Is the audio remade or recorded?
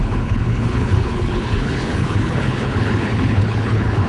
remade